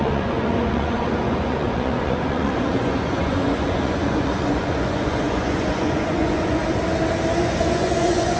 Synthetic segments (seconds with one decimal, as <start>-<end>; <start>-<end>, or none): 0.0-6.6; 7.4-8.4

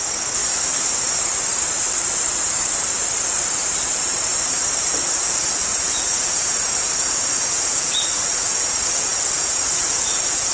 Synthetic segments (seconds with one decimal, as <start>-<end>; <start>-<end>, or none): 0.0-0.4; 4.5-10.5

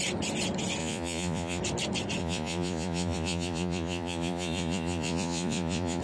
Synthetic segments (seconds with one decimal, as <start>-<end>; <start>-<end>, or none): 0.8-1.6; 2.2-6.0

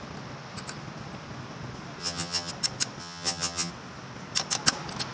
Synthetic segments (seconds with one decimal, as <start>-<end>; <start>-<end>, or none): 2.0-2.5; 3.0-3.7

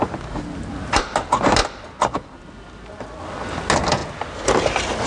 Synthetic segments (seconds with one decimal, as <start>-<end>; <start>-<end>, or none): none

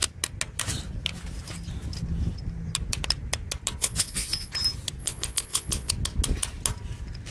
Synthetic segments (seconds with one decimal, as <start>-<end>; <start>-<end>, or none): 3.8-4.5; 5.0-5.9

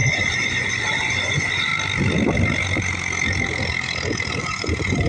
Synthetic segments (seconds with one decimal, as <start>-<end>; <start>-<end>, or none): 0.0-1.7; 4.4-5.1

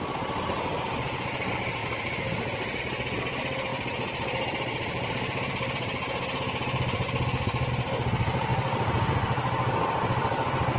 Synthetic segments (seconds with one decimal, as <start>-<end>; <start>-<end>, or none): none